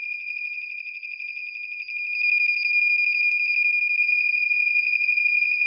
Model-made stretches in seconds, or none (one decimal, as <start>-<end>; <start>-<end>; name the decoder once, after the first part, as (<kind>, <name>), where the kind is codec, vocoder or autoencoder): 0.0-1.4 (vocoder, Vocos); 4.0-5.7